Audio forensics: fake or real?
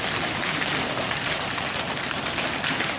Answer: real